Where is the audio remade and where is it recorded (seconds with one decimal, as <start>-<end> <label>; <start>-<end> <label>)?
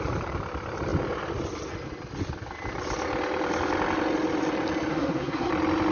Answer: 0.0-4.9 recorded; 4.9-5.5 remade; 5.5-5.9 recorded